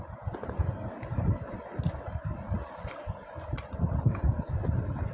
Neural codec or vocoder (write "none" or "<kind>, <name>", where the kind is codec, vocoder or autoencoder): vocoder, BigVGAN v2